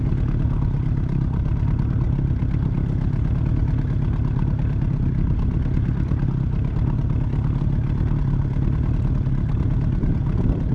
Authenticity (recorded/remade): recorded